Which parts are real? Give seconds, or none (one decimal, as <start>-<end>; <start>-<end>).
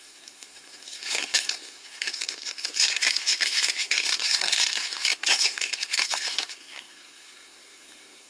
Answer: none